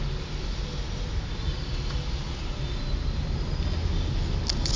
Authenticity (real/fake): real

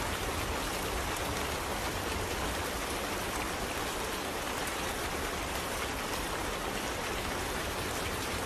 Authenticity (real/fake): fake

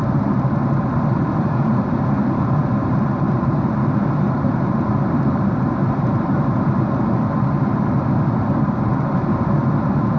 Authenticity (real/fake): fake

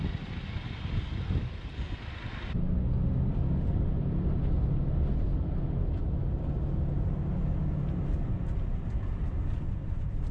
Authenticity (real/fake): real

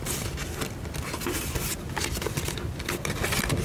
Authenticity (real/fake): real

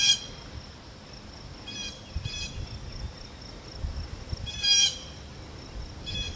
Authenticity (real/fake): real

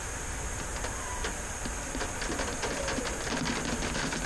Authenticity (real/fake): real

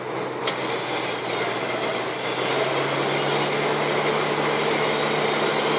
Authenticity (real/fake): real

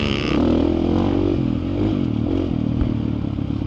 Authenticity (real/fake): real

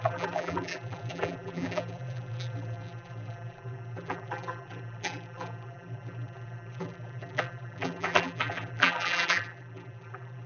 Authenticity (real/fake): fake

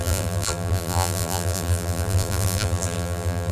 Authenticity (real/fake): fake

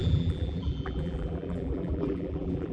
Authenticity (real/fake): fake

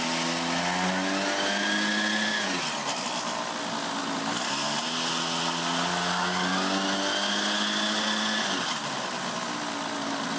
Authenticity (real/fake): real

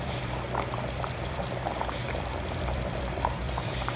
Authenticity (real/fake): fake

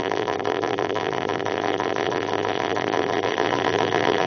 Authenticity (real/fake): fake